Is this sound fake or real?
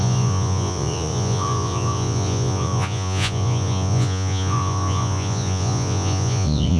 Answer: fake